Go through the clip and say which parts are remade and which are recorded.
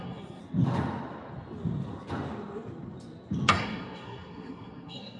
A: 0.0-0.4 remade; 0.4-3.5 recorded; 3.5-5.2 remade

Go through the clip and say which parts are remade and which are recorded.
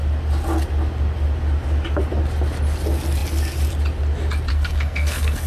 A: 0.0-4.5 recorded; 4.5-5.5 remade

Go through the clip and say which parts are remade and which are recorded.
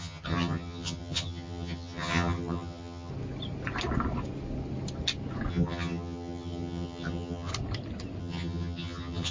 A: 0.0-3.1 remade; 3.1-5.5 recorded; 5.5-7.5 remade; 7.5-8.2 recorded; 8.2-9.3 remade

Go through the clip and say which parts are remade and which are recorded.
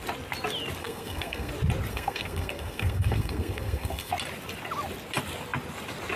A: 0.0-0.8 recorded; 0.8-1.5 remade; 1.5-1.9 recorded; 1.9-4.1 remade; 4.1-6.2 recorded